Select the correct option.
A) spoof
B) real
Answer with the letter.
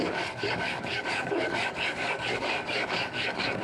A